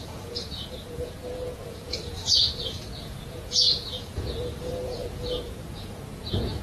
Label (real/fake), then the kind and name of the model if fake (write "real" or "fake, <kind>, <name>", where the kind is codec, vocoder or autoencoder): fake, vocoder, Vocos